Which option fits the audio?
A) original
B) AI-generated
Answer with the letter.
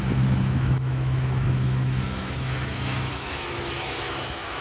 B